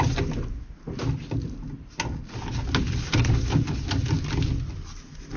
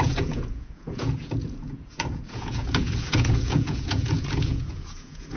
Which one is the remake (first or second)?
second